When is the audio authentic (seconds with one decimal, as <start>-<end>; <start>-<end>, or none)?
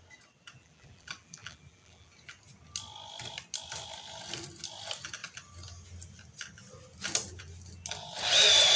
0.0-0.6; 2.1-8.8